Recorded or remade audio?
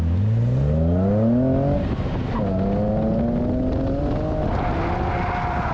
recorded